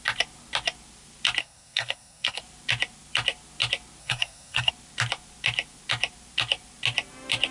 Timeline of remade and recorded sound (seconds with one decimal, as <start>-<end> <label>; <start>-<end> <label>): 0.0-1.4 recorded; 1.4-2.4 remade; 2.4-4.0 recorded; 4.0-4.7 remade; 4.7-7.5 recorded